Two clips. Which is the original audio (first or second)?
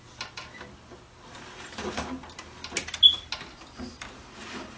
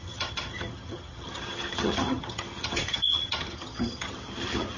first